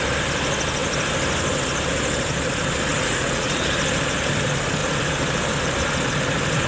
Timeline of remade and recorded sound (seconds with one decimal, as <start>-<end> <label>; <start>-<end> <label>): 0.0-2.9 recorded; 2.9-3.7 remade; 3.7-6.7 recorded